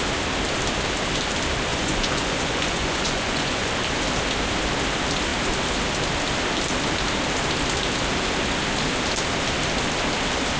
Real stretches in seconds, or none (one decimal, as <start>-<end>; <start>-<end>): 0.0-1.7; 3.7-10.6